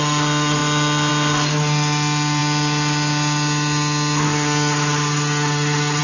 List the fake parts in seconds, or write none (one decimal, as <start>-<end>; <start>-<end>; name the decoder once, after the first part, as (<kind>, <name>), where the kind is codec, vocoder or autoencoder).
none